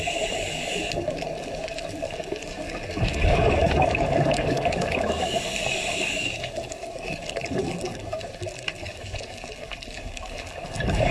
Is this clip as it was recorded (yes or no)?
no